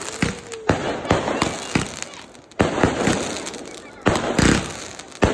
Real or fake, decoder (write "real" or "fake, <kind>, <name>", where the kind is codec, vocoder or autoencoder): real